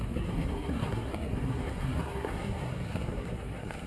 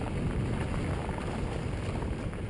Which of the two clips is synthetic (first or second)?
first